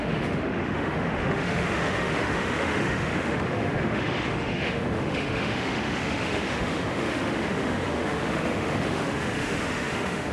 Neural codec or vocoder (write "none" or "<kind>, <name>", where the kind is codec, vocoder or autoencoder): autoencoder, DAC-VAE